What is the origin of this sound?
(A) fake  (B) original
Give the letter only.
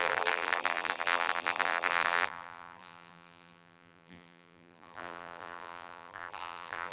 A